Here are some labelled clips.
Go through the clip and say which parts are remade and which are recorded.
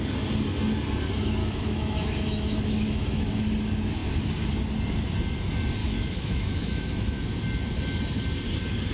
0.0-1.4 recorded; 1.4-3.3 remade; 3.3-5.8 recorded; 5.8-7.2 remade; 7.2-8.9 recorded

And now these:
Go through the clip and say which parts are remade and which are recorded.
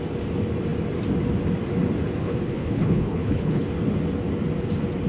0.0-2.2 recorded; 2.2-3.7 remade; 3.7-5.1 recorded